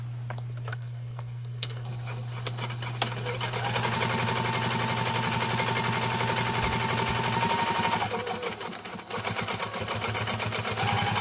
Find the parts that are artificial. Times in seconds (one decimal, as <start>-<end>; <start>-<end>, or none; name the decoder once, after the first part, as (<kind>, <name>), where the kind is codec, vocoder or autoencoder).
0.7-1.9 (codec, SNAC)